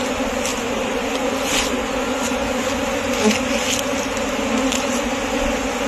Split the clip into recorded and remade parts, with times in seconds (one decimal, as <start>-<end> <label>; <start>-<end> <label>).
0.0-5.9 recorded